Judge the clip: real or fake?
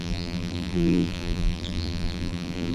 fake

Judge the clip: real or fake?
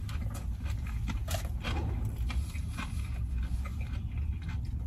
real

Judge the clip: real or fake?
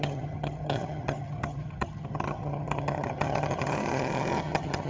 fake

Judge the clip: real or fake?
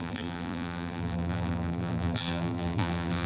fake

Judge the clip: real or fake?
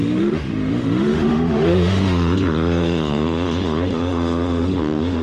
fake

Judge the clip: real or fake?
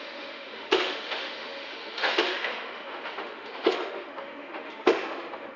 fake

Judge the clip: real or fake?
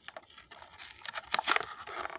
real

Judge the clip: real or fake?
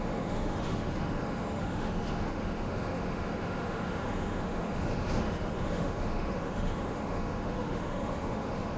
fake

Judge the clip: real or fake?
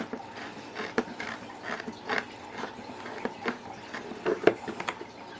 real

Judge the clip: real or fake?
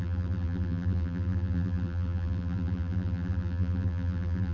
fake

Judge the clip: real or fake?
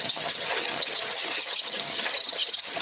fake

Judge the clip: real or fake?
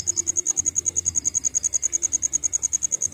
real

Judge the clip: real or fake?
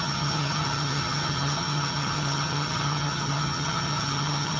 fake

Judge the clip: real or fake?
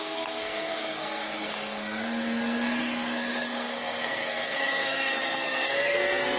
fake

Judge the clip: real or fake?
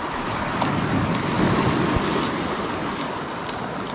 real